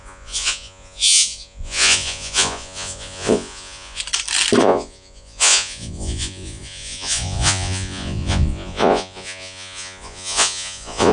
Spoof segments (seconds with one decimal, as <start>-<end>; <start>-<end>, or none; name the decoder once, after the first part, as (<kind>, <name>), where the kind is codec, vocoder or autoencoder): 0.0-4.0 (vocoder, Vocos); 4.6-11.1